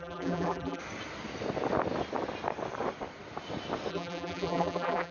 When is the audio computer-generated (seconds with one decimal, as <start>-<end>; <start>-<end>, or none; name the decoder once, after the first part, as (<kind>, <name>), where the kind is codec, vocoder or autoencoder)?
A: 0.0-0.8 (vocoder, BigVGAN v2); 3.9-5.1